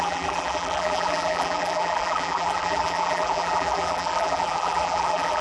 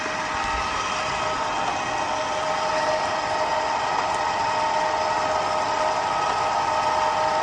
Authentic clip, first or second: second